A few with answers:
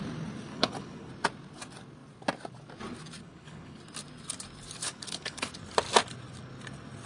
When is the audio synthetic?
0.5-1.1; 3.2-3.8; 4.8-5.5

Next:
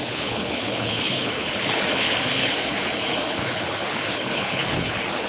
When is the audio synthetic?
0.0-5.3

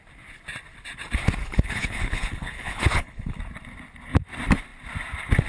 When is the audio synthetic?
1.4-3.4

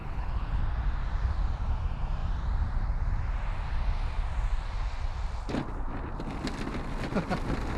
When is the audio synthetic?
0.0-0.6